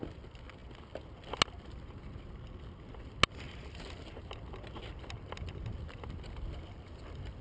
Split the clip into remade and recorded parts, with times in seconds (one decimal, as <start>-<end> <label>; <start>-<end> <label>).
0.0-7.4 recorded